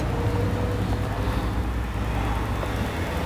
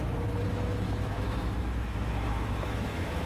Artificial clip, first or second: second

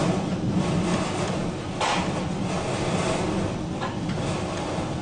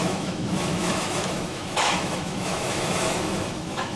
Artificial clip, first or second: second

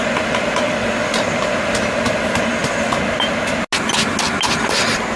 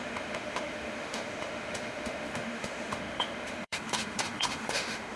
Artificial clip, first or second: second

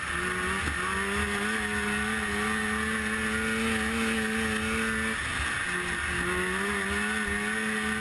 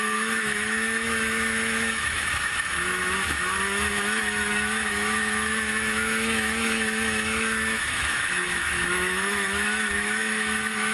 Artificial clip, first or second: second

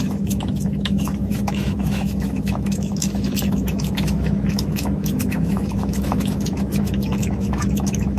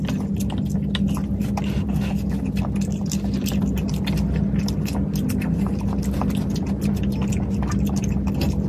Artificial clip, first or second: first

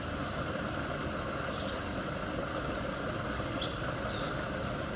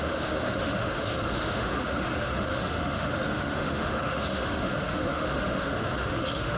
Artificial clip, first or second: second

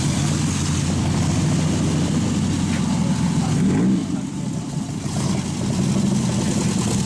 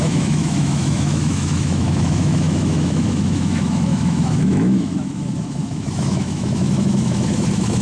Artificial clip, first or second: second